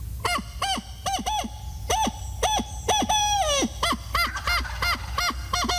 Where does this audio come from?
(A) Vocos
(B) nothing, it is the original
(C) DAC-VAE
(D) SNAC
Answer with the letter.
B